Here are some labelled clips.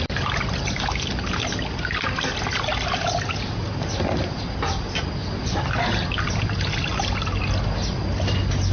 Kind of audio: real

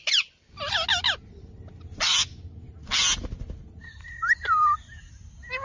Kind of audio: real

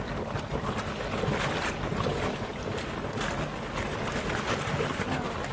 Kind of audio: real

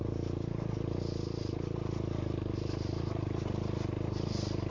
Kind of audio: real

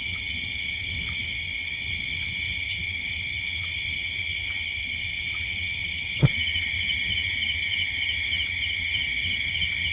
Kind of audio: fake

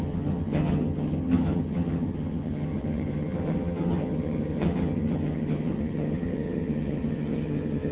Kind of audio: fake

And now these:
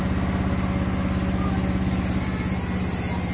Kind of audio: real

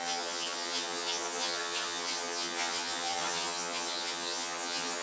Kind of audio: fake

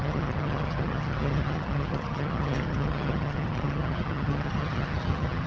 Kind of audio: fake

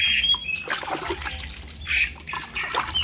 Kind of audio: real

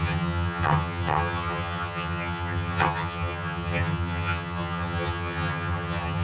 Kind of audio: fake